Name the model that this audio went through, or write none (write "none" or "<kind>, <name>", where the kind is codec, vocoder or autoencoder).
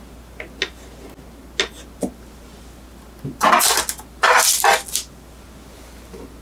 none